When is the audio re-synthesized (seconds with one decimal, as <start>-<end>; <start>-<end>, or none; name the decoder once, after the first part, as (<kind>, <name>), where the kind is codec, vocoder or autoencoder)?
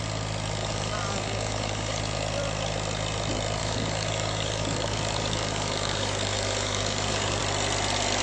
0.6-2.0 (codec, DAC); 3.6-7.4